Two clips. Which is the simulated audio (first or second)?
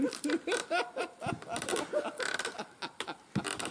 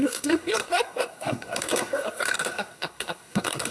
second